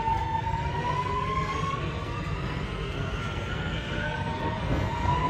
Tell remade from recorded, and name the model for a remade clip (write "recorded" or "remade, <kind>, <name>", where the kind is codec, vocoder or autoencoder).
remade, codec, SNAC